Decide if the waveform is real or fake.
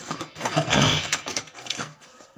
fake